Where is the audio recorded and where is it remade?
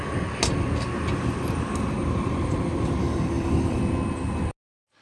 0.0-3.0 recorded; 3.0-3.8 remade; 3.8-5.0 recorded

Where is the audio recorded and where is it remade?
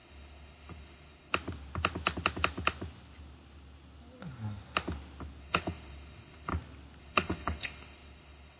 0.0-1.3 remade; 1.3-5.4 recorded; 5.4-6.5 remade; 6.5-7.0 recorded; 7.0-8.6 remade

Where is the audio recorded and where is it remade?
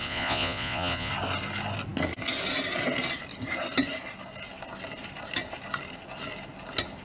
0.0-1.1 remade; 1.1-7.0 recorded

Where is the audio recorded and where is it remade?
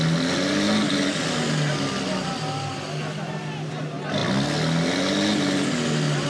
0.0-6.3 recorded